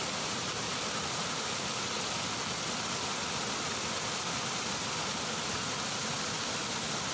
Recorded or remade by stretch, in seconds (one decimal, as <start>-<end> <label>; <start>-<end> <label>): 0.0-7.1 recorded